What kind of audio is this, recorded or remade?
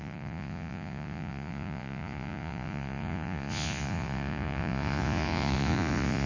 remade